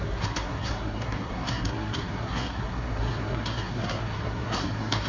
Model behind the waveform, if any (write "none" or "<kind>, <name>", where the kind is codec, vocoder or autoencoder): codec, SNAC